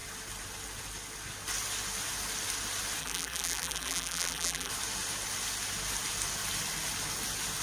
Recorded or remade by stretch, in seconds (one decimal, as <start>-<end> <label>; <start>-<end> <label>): 0.0-3.0 recorded; 3.0-4.7 remade; 4.7-7.6 recorded